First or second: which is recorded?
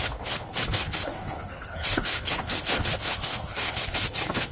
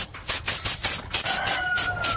second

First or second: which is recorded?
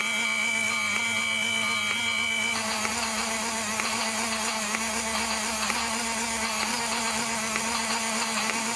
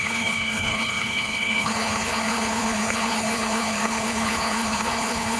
first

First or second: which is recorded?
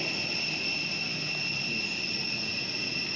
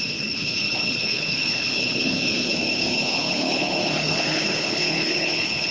first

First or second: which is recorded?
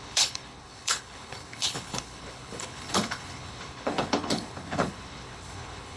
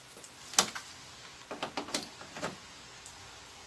second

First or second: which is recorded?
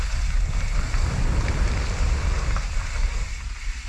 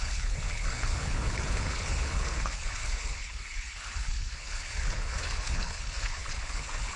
first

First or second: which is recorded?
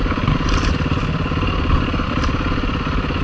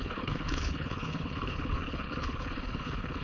first